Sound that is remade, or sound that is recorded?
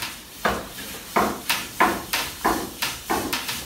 remade